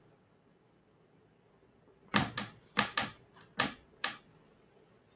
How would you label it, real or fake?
real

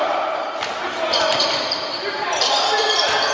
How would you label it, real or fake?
fake